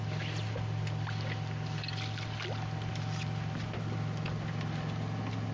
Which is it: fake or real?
real